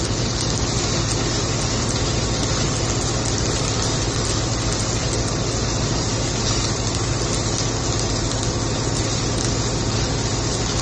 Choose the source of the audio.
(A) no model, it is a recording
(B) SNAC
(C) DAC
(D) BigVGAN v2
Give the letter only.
A